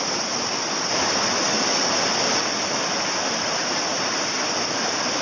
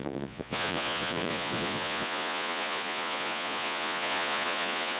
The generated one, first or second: second